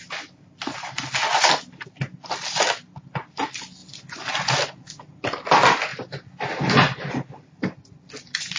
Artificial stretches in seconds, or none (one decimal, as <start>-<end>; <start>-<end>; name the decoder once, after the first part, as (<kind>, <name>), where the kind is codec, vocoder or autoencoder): none